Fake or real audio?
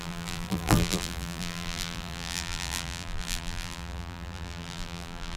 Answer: fake